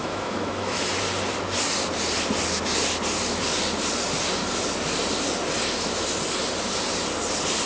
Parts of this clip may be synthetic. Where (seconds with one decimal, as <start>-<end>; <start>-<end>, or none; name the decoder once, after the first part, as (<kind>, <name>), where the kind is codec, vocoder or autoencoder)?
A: 0.0-0.9 (autoencoder, DAC-VAE)